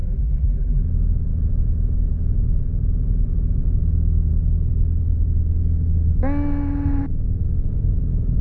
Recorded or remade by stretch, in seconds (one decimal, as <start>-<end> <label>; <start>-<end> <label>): 0.0-0.8 remade; 0.8-8.4 recorded